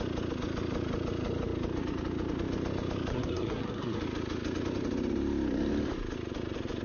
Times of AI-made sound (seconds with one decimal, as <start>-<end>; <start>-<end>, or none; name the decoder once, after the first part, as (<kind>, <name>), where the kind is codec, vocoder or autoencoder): 3.1-4.0 (codec, SNAC)